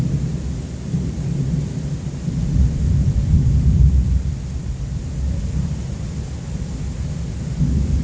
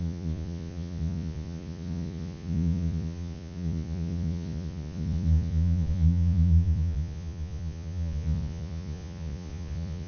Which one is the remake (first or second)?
second